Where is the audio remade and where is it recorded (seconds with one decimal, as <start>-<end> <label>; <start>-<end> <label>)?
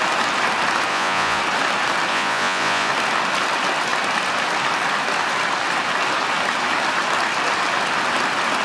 0.0-0.9 recorded; 0.9-1.4 remade; 1.4-2.1 recorded; 2.1-2.9 remade; 2.9-8.6 recorded